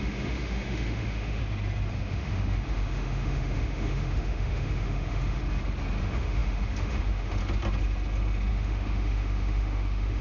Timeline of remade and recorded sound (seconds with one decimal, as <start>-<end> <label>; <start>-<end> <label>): 0.0-1.4 remade; 1.4-1.9 recorded; 1.9-5.4 remade; 5.4-6.0 recorded; 6.0-7.4 remade; 7.4-8.5 recorded; 8.5-10.2 remade